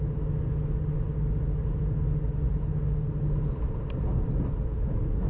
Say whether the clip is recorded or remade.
recorded